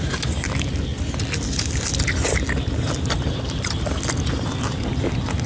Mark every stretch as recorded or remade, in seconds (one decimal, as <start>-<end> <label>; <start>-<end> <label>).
0.0-5.5 recorded